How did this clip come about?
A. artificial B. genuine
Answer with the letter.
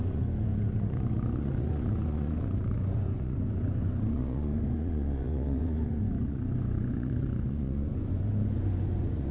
A